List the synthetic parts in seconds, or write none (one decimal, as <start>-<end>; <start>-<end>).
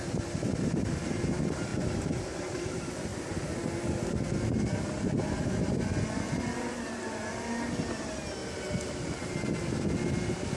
none